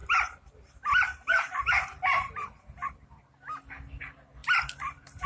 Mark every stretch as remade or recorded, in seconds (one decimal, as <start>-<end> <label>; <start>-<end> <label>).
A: 0.0-3.2 remade; 3.2-4.4 recorded; 4.4-5.3 remade